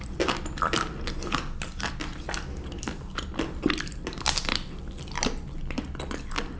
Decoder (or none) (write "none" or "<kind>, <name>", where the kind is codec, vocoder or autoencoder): none